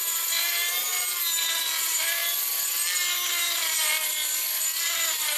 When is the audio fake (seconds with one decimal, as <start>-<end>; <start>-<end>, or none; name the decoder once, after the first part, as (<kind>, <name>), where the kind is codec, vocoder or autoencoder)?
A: 0.0-0.9 (vocoder, BigVGAN v2); 1.8-2.2; 3.3-3.9; 4.8-5.4

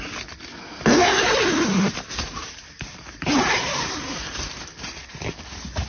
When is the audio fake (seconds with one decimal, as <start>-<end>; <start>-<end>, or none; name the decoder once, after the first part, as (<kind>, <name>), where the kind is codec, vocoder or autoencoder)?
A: 1.0-4.5 (vocoder, BigVGAN v2)

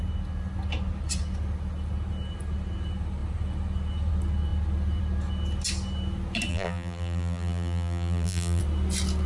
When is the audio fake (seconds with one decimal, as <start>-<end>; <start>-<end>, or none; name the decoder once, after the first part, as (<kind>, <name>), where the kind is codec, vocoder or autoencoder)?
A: 6.5-8.6 (vocoder, BigVGAN v2)

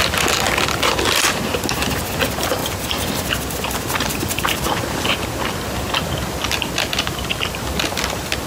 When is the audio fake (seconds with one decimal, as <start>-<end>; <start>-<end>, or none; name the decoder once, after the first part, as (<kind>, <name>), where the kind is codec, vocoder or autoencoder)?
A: none

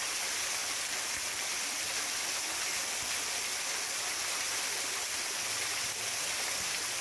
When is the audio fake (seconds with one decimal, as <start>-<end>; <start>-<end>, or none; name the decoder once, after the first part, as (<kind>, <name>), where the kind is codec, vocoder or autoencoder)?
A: 0.0-0.6 (vocoder, BigVGAN v2); 4.8-7.0

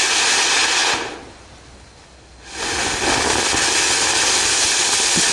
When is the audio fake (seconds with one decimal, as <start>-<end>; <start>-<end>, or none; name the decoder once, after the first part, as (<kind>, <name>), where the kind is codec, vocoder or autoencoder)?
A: none

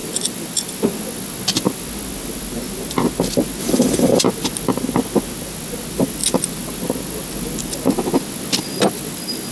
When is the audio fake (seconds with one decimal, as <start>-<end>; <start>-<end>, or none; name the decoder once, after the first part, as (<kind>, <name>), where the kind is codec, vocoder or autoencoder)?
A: 3.6-4.2 (vocoder, BigVGAN v2)